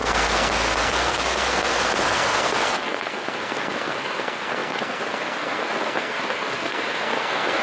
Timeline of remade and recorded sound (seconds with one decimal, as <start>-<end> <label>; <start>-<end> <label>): 0.0-7.6 remade